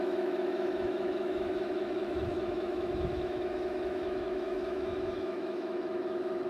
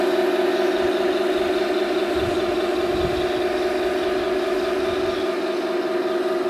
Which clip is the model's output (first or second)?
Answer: first